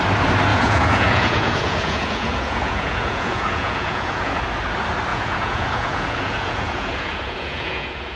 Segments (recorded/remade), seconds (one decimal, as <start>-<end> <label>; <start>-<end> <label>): 0.0-0.5 recorded; 0.5-4.4 remade; 4.4-5.1 recorded; 5.1-8.2 remade